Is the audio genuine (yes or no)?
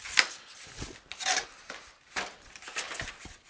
yes